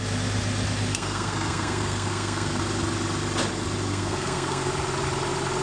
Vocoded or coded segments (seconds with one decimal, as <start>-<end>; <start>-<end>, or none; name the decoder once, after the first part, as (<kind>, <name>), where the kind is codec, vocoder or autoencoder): 0.9-2.6 (codec, SNAC); 3.9-4.7